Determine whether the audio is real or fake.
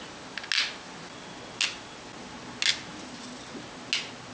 real